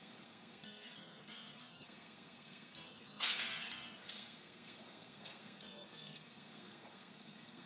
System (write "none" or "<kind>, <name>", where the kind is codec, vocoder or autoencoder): codec, SNAC